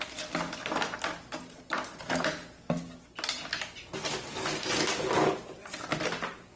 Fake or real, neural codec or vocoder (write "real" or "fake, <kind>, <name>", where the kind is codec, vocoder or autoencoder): real